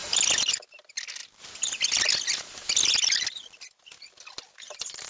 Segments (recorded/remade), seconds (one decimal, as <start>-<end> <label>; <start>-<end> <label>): 0.0-5.1 recorded